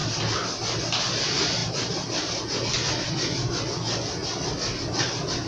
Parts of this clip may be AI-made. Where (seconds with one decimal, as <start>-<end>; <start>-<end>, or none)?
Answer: none